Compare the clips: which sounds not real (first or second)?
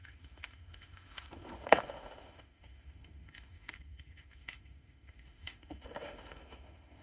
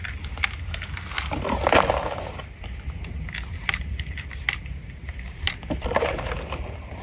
first